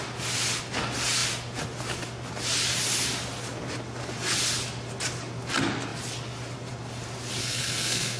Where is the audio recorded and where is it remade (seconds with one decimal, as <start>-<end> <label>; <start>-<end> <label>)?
0.0-7.4 recorded; 7.4-8.2 remade